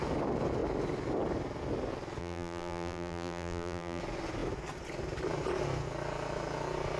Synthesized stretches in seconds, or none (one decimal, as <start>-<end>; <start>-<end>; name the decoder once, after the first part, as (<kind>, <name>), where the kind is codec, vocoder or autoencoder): 2.2-4.0 (vocoder, BigVGAN v2)